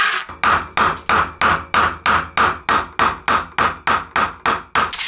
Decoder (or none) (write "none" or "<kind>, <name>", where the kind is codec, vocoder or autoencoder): none